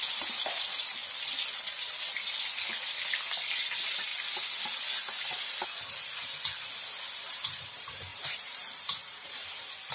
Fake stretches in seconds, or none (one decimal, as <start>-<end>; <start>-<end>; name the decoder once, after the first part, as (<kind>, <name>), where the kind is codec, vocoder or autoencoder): 0.0-1.0 (vocoder, BigVGAN v2); 3.1-4.1; 7.3-9.9